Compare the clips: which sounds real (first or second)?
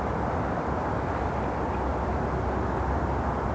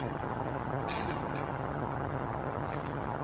first